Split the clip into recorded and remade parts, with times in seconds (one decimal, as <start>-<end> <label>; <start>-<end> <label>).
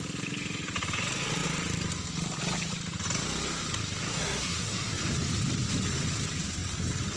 0.0-4.1 recorded; 4.1-5.0 remade; 5.0-7.2 recorded